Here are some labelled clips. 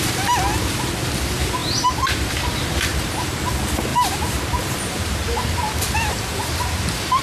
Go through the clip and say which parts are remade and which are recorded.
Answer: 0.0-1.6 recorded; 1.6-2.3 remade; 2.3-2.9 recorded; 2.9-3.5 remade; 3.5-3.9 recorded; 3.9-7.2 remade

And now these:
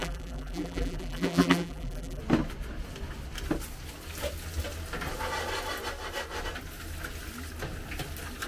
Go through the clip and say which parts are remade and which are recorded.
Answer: 0.0-2.2 remade; 2.2-8.5 recorded

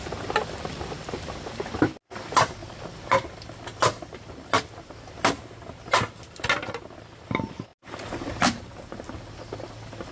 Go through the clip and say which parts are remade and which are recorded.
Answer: 0.0-10.1 recorded

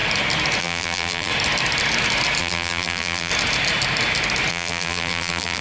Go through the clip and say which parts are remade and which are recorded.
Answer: 0.0-0.6 recorded; 0.6-1.3 remade; 1.3-2.4 recorded; 2.4-3.3 remade; 3.3-4.5 recorded; 4.5-5.6 remade